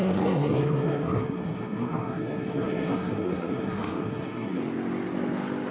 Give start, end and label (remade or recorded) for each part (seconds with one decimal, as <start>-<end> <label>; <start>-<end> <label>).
0.0-4.6 remade; 4.6-5.7 recorded